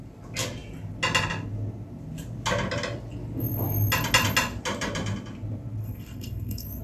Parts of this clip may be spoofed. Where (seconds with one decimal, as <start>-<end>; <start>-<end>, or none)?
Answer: 5.8-6.8